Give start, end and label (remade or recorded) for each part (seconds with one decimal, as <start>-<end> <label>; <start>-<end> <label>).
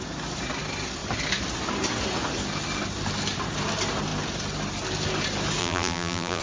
0.0-5.6 recorded; 5.6-6.4 remade